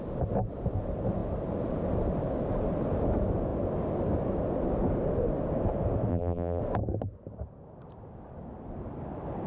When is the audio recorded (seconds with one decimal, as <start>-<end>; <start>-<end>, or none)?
0.0-6.1; 6.6-9.5